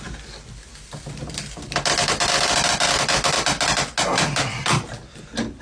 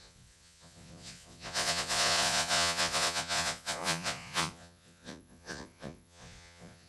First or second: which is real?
first